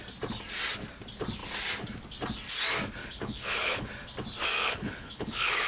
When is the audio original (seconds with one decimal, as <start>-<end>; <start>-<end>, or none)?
0.0-3.0; 3.9-4.6